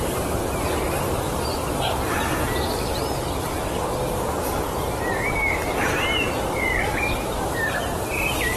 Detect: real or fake fake